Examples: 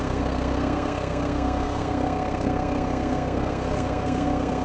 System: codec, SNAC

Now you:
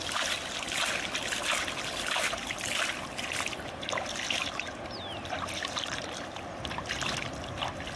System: none